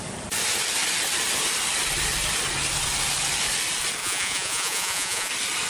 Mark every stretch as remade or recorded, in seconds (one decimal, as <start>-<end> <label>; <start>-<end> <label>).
0.0-4.0 recorded; 4.0-5.3 remade; 5.3-5.7 recorded